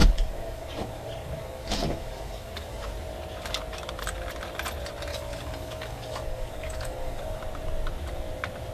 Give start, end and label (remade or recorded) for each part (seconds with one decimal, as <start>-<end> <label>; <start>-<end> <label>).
0.0-2.9 remade; 2.9-5.1 recorded; 5.1-7.4 remade; 7.4-8.7 recorded